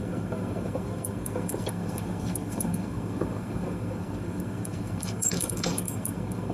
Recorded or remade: remade